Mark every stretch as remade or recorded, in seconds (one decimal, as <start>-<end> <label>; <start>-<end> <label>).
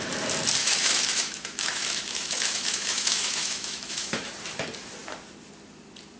0.0-0.6 recorded; 0.6-4.3 remade; 4.3-6.2 recorded